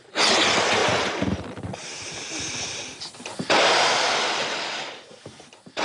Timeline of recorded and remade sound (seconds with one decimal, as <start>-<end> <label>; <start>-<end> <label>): 0.0-5.8 recorded